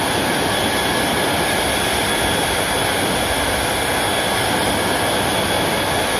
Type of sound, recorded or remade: recorded